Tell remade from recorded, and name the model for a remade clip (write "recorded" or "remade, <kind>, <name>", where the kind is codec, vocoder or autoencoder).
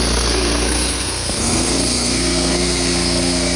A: remade, codec, SNAC